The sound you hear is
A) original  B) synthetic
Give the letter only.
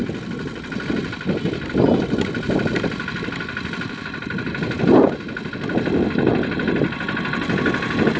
A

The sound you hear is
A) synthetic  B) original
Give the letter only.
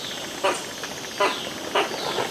B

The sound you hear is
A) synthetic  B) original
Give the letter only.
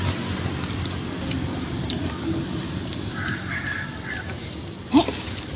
B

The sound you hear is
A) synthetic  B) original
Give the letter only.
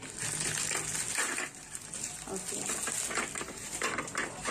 B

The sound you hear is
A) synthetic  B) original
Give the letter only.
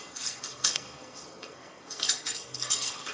A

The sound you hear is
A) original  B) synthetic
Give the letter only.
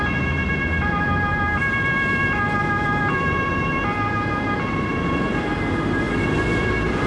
A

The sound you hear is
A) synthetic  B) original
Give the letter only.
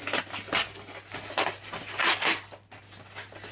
B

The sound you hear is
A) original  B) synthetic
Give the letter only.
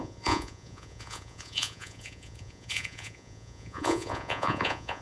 B